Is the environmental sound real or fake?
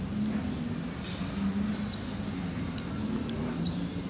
real